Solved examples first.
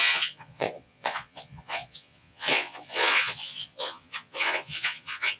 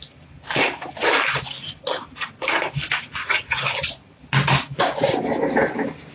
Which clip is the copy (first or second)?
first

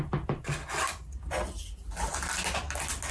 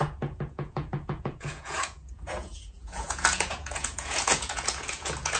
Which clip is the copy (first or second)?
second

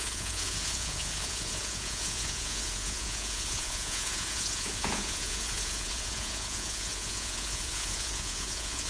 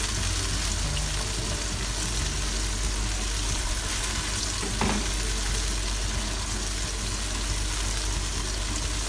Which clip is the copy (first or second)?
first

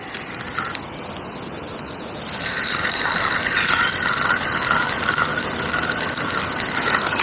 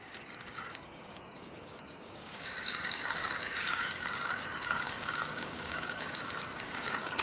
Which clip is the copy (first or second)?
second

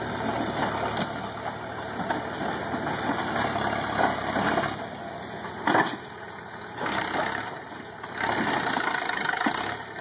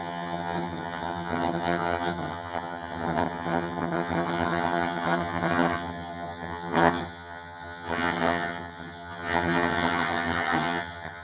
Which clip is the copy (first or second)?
second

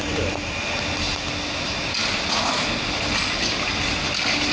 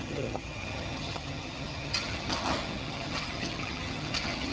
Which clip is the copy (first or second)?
second